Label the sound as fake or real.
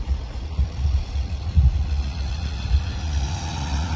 fake